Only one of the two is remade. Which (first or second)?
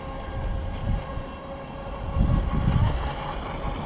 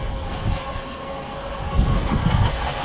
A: second